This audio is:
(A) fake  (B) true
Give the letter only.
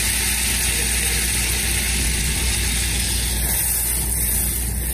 B